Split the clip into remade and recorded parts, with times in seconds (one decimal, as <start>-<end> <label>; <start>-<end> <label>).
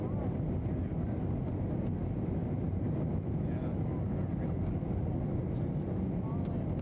0.0-6.8 recorded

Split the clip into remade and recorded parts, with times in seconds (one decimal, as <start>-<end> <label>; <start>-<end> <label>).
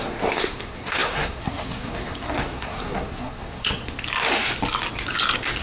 0.0-3.8 remade; 3.8-5.6 recorded